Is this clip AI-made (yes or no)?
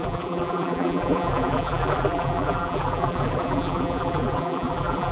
yes